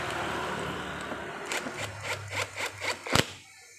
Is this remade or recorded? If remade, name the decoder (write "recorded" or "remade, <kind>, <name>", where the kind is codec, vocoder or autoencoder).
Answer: recorded